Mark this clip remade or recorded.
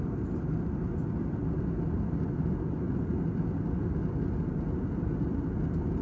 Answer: recorded